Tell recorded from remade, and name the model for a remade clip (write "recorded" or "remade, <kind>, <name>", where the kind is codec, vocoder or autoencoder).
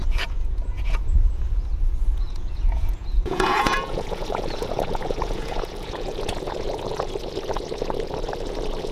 remade, vocoder, Vocos